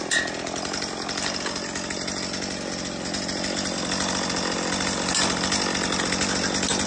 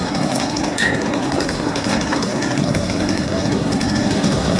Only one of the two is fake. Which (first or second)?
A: second